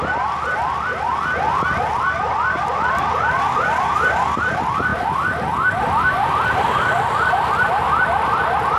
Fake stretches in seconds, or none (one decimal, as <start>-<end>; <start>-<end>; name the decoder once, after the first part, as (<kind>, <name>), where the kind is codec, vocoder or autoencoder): none